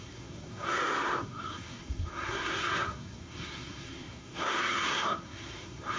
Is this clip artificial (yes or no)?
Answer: yes